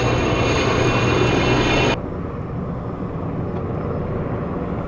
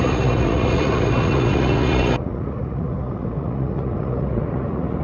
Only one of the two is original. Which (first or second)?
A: first